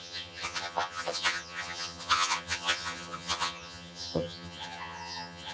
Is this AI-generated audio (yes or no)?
yes